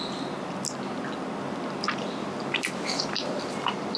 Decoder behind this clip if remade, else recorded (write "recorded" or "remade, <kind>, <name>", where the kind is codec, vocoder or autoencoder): recorded